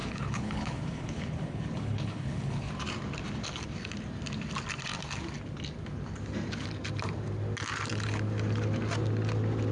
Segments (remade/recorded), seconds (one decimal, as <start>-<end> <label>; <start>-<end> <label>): 0.0-2.7 remade; 2.7-9.7 recorded